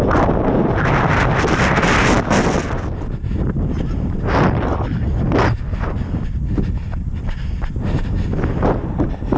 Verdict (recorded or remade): recorded